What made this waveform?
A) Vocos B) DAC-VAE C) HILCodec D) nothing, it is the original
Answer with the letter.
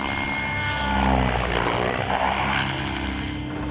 D